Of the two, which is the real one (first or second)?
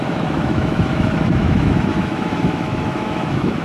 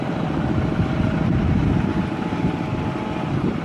second